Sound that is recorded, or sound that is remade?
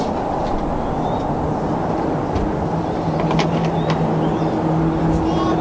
recorded